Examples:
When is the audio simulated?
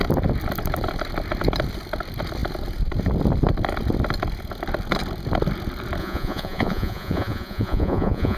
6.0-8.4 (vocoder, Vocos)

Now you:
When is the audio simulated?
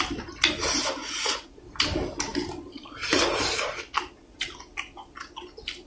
1.0-1.6 (vocoder, Vocos)